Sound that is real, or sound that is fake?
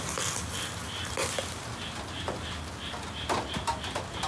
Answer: real